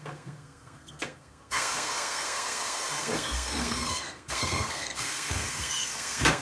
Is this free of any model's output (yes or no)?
no